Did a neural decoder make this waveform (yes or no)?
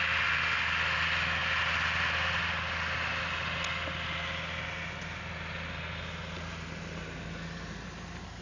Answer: no